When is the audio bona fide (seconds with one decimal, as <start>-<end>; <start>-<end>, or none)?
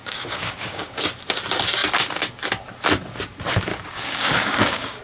1.1-3.7